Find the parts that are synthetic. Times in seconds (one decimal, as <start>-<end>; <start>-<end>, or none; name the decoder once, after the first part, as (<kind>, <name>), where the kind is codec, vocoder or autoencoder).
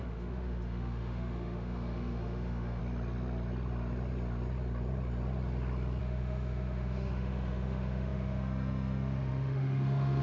0.0-2.8 (autoencoder, DAC-VAE); 6.0-10.2